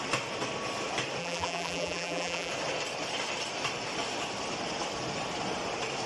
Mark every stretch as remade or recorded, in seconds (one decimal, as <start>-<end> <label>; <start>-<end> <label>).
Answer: 0.0-1.2 recorded; 1.2-2.5 remade; 2.5-6.1 recorded